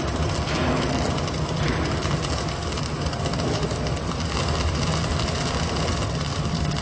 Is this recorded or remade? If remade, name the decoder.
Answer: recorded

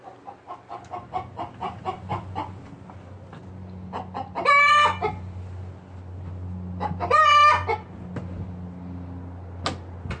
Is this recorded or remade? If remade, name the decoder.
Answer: recorded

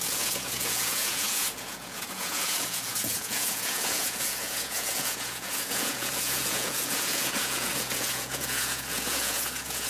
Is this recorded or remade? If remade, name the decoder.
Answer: remade, vocoder, Vocos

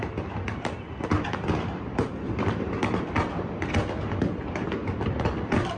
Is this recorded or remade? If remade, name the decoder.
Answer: recorded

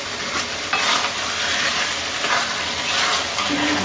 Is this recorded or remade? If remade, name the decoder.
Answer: recorded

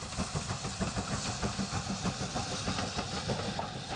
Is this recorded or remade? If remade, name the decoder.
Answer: recorded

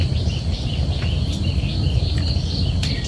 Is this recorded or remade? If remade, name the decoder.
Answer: recorded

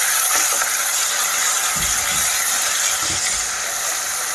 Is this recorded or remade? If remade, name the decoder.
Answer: recorded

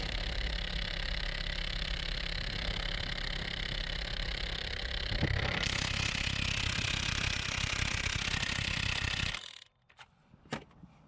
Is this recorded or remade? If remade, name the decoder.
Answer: recorded